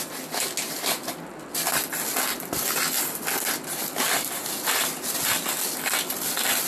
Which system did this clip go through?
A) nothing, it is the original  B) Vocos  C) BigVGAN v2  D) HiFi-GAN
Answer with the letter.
A